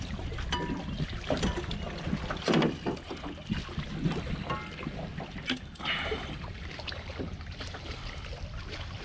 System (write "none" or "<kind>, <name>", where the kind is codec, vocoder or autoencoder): none